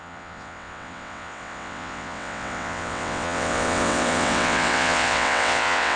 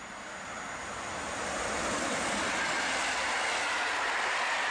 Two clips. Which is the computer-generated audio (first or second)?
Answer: first